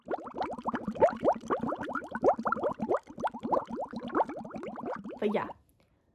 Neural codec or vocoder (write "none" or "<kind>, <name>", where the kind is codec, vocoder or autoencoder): none